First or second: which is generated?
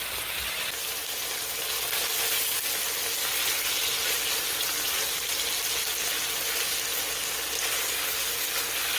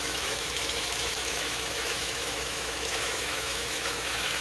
second